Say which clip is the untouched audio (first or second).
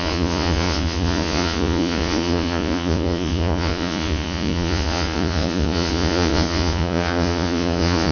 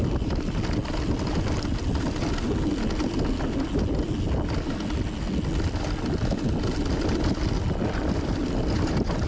second